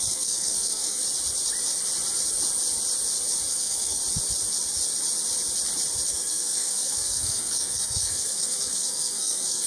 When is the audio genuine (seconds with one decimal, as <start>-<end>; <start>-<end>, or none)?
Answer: 1.0-3.5; 4.0-6.1